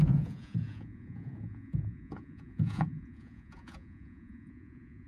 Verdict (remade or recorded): remade